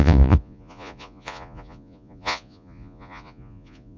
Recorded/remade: remade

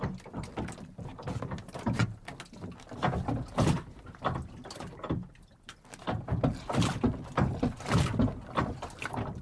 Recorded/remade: recorded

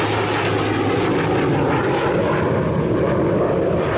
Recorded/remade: recorded